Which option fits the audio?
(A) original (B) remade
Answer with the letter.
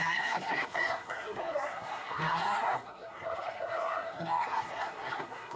B